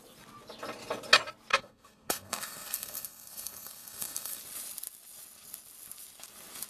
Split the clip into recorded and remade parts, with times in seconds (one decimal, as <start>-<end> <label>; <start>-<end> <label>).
0.0-1.5 recorded; 1.5-4.4 remade; 4.4-6.7 recorded